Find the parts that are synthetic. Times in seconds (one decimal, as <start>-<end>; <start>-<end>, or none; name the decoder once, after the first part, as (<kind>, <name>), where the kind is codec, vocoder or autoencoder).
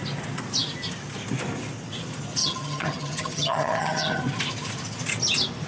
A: 2.4-4.2 (vocoder, HiFi-GAN)